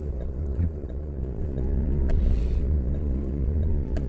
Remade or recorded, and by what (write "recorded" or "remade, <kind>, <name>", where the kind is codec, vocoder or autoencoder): remade, vocoder, Vocos